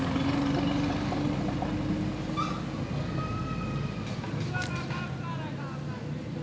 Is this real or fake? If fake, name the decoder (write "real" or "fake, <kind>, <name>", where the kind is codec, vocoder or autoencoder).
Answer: real